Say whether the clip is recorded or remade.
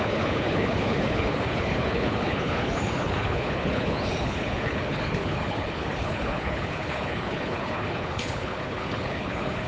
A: remade